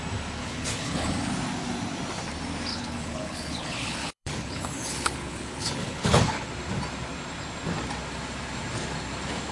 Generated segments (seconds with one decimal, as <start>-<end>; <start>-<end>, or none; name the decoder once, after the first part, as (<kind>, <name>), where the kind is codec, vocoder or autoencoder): 0.4-1.3 (codec, HILCodec); 2.7-6.5